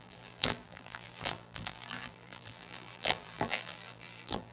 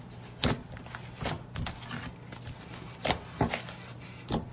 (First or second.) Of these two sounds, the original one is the second